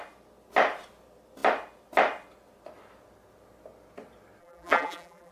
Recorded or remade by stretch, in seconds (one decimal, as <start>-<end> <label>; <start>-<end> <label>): 0.0-4.4 recorded; 4.4-5.3 remade